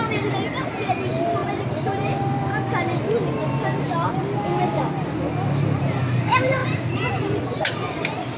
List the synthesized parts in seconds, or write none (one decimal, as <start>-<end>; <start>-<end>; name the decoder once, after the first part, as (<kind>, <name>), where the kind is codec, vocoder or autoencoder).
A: 6.6-7.4 (vocoder, BigVGAN v2)